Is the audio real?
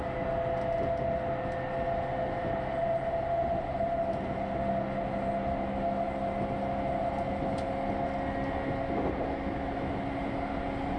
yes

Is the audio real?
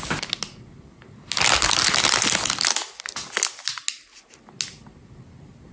yes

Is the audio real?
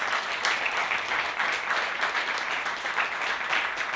yes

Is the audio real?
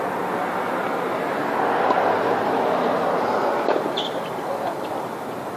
yes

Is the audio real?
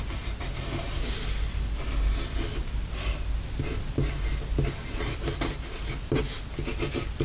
yes